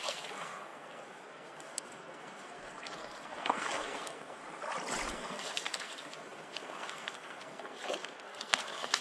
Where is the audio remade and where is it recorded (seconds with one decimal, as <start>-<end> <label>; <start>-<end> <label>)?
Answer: 0.0-4.4 remade; 4.4-5.1 recorded; 5.1-9.0 remade